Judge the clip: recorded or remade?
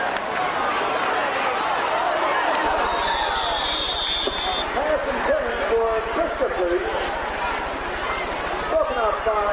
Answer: recorded